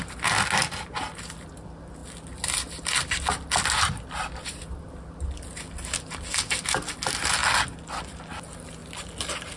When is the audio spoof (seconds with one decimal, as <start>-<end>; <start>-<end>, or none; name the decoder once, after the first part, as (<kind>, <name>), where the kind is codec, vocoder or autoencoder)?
none